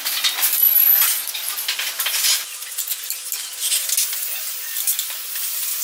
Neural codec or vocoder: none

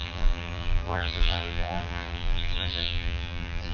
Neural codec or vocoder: vocoder, BigVGAN v2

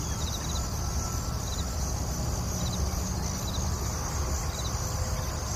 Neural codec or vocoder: none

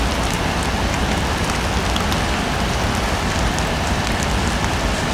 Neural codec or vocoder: none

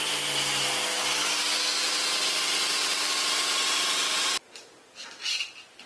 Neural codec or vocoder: none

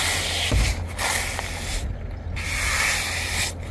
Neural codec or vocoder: none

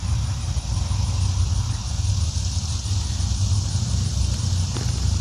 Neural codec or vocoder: none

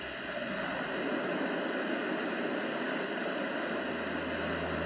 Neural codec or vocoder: none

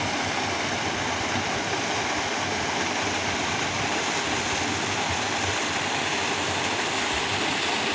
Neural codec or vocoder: none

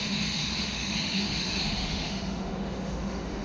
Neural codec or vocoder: autoencoder, DAC-VAE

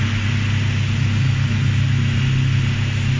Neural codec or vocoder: none